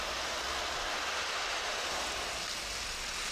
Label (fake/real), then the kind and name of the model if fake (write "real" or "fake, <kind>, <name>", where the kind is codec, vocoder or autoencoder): real